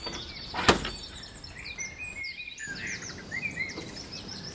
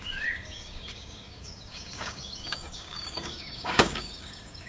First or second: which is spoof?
second